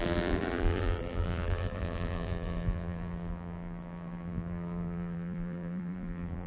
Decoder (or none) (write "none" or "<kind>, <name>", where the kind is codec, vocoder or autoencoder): vocoder, BigVGAN v2